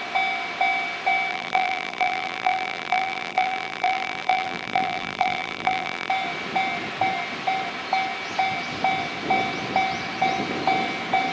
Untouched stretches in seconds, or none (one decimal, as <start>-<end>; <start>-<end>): 0.0-1.3; 6.1-11.3